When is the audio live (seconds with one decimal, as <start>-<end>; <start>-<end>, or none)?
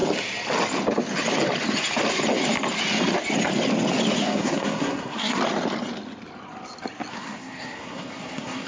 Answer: 0.0-4.2; 5.4-7.1